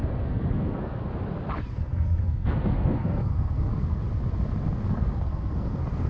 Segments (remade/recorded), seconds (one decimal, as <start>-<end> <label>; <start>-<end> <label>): 0.0-1.1 remade; 1.1-1.8 recorded; 1.8-4.0 remade; 4.0-4.9 recorded; 4.9-6.1 remade